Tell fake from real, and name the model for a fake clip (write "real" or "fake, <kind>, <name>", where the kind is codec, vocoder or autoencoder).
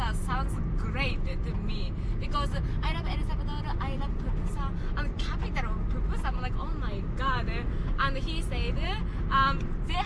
real